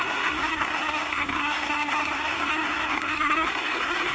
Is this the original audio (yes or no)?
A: no